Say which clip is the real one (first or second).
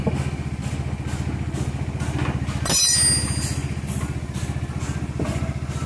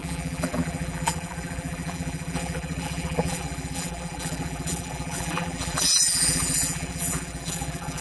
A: first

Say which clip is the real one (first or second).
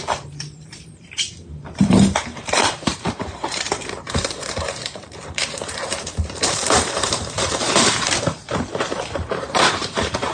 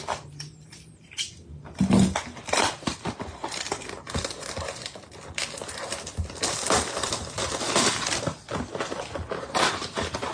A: second